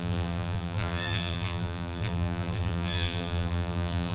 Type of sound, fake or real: fake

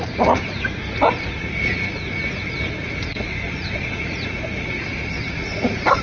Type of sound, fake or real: fake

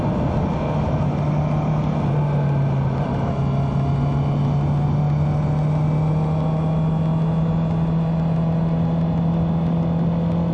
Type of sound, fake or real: real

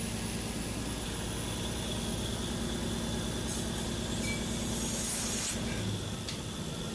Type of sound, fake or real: real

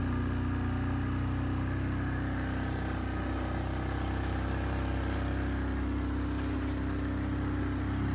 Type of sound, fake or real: real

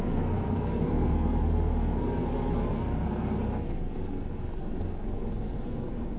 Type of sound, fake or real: fake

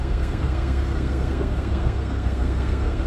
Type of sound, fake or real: fake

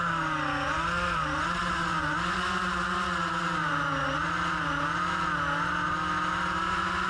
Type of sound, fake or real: real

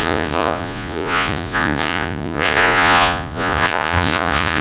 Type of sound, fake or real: fake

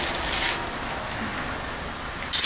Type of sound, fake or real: real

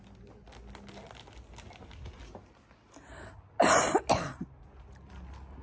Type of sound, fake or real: real